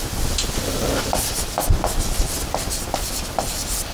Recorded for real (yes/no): yes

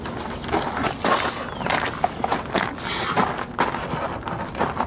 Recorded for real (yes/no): yes